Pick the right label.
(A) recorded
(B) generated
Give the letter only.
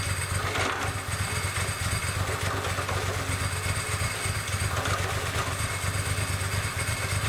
A